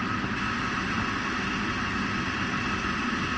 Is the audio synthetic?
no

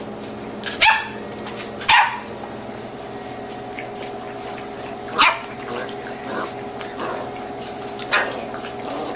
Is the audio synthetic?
no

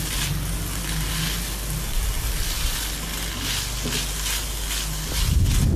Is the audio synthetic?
no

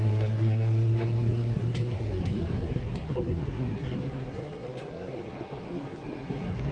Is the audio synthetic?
yes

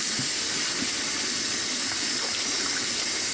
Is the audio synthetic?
no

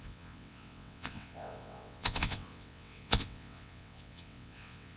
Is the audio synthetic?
yes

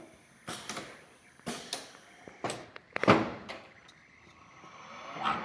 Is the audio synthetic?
no